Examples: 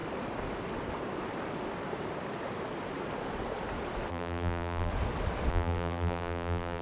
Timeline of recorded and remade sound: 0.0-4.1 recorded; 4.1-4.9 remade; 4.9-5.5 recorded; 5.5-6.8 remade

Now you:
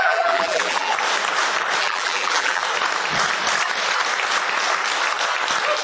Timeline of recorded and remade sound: 0.0-0.9 remade; 0.9-1.8 recorded; 1.8-2.6 remade; 2.6-5.8 recorded

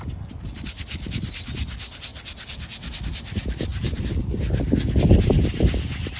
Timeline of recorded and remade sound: 0.0-3.7 recorded; 3.7-4.4 remade; 4.4-6.2 recorded

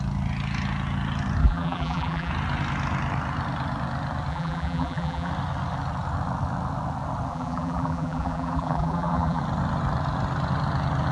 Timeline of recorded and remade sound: 0.0-1.4 recorded; 1.4-2.3 remade; 2.3-4.3 recorded; 4.3-5.3 remade; 5.3-7.3 recorded; 7.3-9.4 remade; 9.4-11.1 recorded

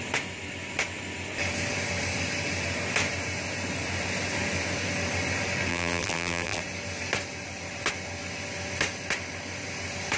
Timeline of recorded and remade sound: 0.0-5.7 recorded; 5.7-6.6 remade; 6.6-10.2 recorded